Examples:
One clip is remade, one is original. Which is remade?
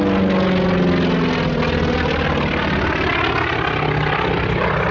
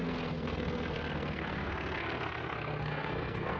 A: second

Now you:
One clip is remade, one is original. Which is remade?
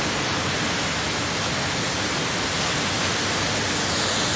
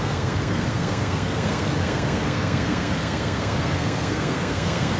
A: second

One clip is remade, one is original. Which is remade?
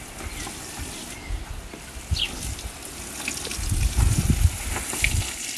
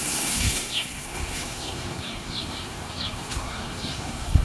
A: second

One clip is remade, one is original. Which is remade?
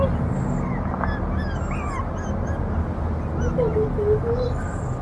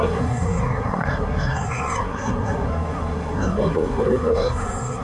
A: second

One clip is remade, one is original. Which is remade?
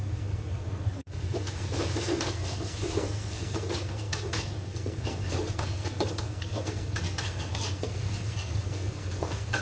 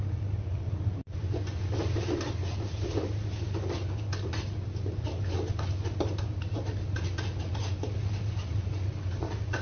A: first